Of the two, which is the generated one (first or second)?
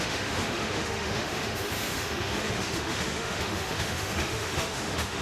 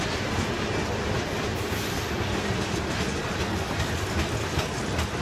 first